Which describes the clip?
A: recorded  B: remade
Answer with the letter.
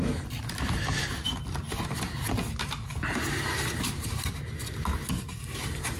A